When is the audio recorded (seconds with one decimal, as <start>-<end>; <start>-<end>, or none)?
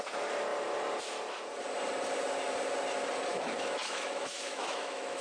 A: 0.0-3.3